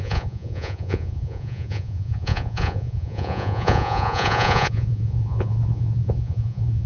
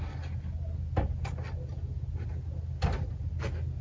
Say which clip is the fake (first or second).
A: first